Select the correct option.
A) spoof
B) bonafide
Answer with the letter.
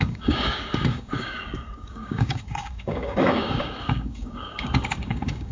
A